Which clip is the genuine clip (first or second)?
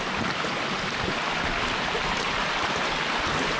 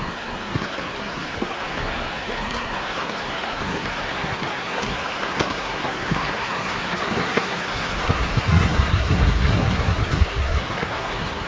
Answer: first